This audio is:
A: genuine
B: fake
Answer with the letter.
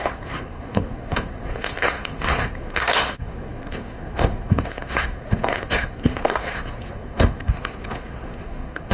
B